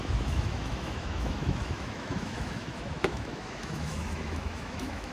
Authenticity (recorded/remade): remade